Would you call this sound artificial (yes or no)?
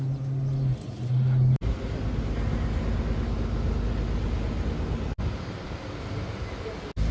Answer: no